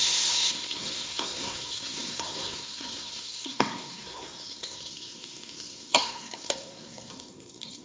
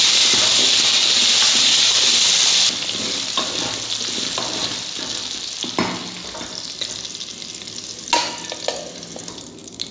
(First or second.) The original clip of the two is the second